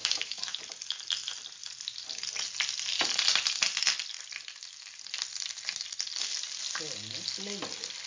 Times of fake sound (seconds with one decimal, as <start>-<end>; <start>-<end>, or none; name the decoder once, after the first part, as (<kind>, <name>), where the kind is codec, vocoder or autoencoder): 0.0-0.6 (autoencoder, DAC-VAE)